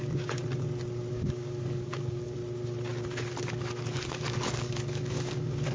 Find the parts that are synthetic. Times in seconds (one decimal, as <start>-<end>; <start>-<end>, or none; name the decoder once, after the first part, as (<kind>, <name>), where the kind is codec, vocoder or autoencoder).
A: 0.0-0.4 (codec, DAC); 1.1-2.4; 3.4-5.7